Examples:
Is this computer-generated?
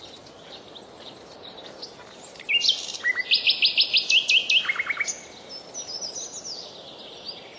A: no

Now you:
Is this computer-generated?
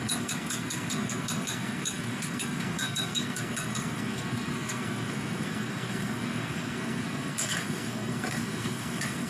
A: yes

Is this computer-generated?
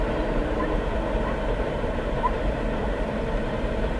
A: yes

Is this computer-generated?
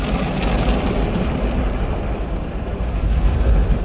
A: yes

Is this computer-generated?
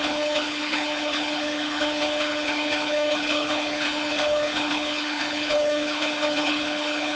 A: yes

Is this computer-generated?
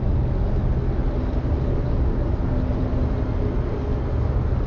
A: no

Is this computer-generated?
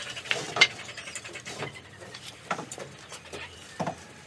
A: yes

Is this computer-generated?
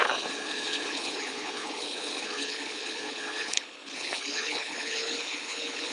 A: yes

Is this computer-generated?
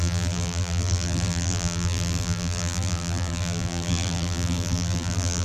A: yes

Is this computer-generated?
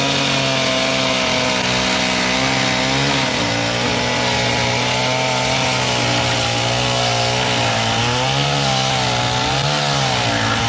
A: no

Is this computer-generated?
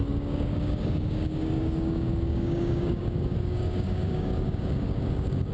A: yes